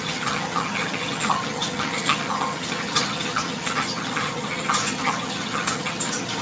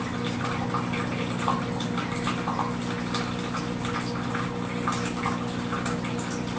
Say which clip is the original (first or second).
second